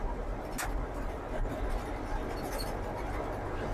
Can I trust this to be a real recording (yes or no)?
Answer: yes